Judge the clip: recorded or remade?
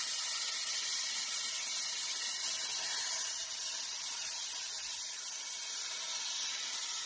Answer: recorded